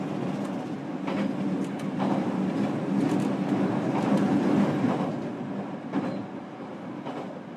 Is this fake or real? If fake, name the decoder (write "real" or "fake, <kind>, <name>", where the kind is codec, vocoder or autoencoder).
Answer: real